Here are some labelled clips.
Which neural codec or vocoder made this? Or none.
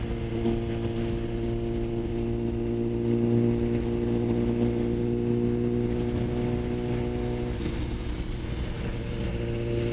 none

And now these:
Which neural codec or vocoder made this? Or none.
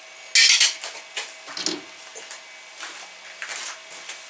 none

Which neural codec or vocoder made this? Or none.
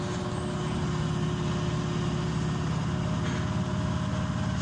none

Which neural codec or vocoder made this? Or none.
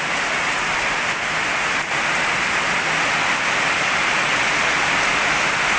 none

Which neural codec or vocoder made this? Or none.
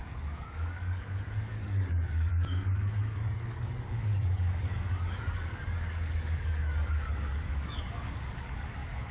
codec, DAC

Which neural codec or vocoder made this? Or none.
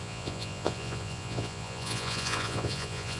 vocoder, Vocos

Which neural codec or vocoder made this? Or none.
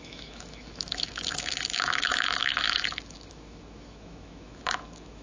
autoencoder, DAC-VAE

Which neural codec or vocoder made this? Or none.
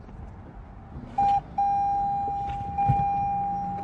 none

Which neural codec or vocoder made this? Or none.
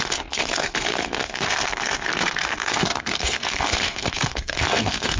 codec, SNAC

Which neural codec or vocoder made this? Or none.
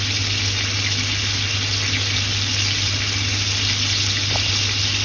none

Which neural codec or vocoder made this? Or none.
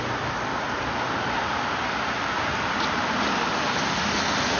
none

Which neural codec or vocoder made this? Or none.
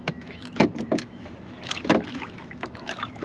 autoencoder, DAC-VAE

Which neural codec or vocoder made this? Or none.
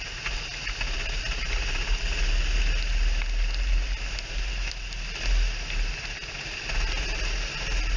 none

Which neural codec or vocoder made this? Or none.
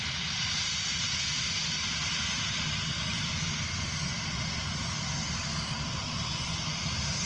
none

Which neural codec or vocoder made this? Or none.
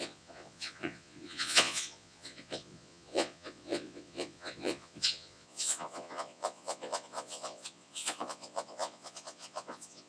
vocoder, Vocos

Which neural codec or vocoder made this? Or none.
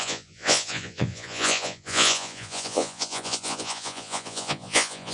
vocoder, Vocos